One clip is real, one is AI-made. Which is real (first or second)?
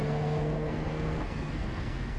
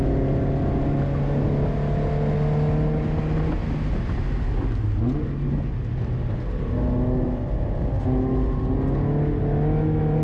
second